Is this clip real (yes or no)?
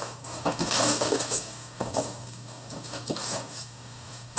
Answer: no